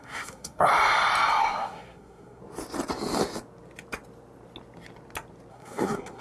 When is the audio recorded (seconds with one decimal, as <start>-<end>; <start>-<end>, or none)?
0.7-1.4; 2.4-5.5